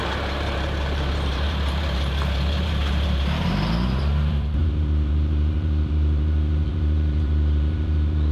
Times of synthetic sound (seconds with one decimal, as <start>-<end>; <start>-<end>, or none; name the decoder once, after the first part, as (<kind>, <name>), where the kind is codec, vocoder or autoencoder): 0.0-8.3 (vocoder, BigVGAN v2)

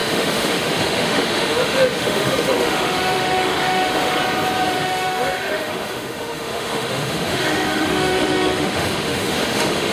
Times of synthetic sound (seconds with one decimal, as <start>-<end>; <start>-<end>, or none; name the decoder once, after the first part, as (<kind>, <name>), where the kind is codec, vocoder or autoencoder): 0.0-4.2 (autoencoder, DAC-VAE); 4.7-9.9

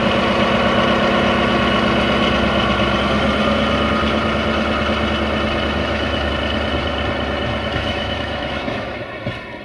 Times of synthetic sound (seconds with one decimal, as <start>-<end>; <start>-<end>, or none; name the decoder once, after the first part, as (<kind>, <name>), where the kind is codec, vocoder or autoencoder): 5.8-6.3 (autoencoder, DAC-VAE); 7.7-9.0

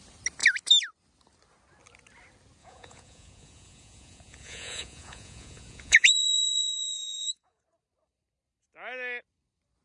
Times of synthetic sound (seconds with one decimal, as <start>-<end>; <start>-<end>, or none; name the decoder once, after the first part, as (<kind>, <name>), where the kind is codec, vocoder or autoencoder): 2.6-7.6 (vocoder, Vocos)